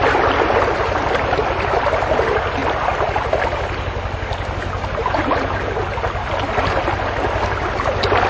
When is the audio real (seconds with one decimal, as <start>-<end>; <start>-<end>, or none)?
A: 0.0-8.3